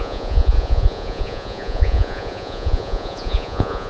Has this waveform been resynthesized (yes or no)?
yes